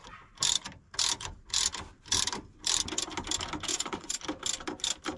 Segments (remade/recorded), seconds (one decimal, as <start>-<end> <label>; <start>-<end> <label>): 0.0-3.7 recorded; 3.7-4.2 remade; 4.2-5.2 recorded